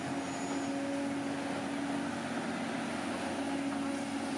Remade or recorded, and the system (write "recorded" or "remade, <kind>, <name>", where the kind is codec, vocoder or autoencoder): recorded